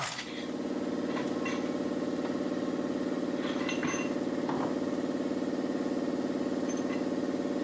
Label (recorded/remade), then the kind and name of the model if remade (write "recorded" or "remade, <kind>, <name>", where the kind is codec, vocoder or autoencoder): recorded